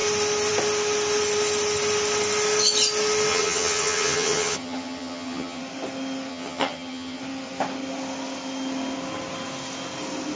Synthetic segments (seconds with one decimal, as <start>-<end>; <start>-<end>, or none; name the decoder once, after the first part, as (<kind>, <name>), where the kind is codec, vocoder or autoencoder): 3.3-5.6 (vocoder, HiFi-GAN); 6.3-7.2

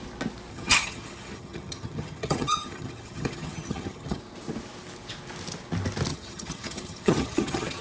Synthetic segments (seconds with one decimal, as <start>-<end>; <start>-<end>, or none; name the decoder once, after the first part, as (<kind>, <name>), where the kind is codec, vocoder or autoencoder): 0.5-4.2 (vocoder, HiFi-GAN); 6.1-7.8